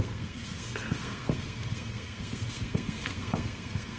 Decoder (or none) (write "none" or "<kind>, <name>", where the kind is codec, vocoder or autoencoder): codec, SNAC